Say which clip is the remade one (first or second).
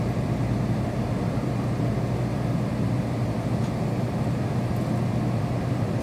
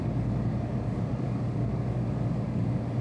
second